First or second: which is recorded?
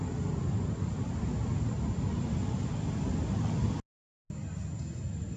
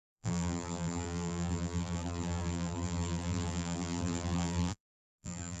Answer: first